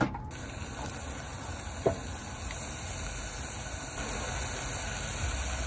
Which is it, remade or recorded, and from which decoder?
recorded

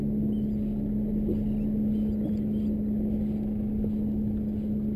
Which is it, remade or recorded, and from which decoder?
recorded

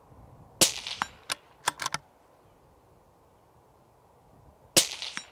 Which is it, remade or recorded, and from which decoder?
recorded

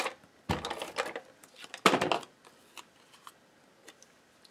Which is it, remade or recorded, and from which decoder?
recorded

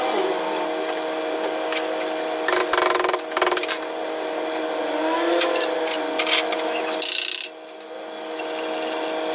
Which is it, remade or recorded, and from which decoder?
recorded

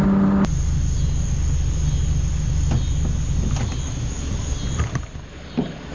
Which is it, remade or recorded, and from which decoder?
recorded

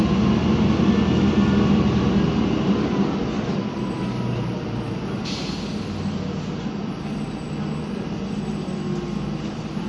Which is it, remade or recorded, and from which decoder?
recorded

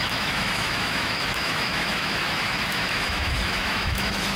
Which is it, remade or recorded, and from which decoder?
remade, autoencoder, DAC-VAE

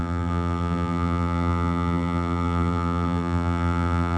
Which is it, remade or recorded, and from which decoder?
remade, vocoder, BigVGAN v2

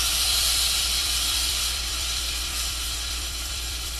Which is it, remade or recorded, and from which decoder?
remade, vocoder, BigVGAN v2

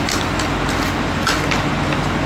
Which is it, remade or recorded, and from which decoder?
recorded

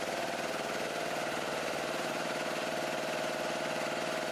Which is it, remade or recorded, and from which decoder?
remade, vocoder, BigVGAN v2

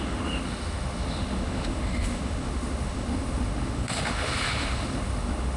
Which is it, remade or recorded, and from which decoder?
remade, autoencoder, DAC-VAE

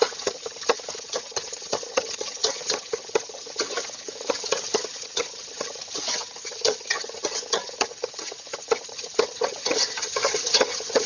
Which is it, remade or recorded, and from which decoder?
remade, vocoder, HiFi-GAN